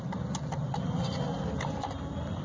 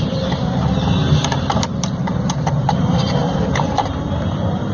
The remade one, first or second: second